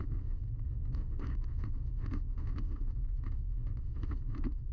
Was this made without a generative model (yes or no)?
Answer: no